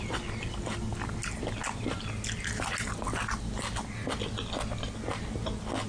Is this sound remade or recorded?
recorded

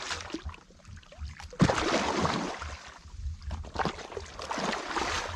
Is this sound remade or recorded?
recorded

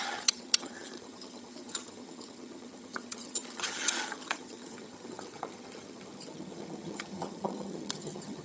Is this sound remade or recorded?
remade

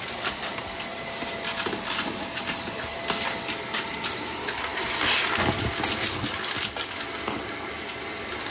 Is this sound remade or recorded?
recorded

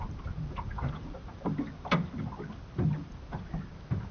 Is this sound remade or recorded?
recorded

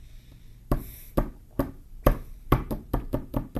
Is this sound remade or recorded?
remade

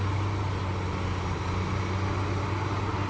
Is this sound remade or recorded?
recorded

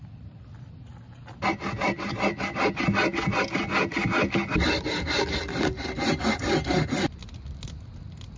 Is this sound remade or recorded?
recorded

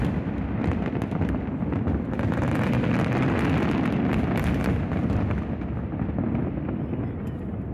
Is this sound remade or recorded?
recorded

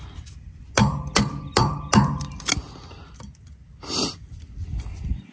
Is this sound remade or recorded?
recorded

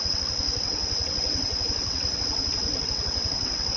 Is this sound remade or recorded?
remade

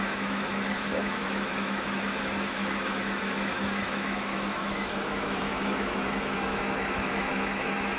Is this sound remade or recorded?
remade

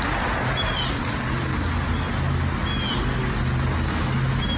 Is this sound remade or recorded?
recorded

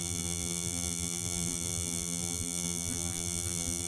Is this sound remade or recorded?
remade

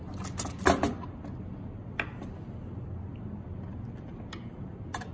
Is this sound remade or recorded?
recorded